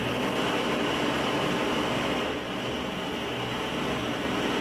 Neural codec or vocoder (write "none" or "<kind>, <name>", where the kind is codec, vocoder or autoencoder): none